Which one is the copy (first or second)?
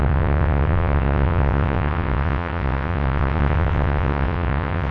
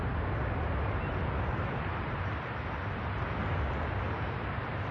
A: first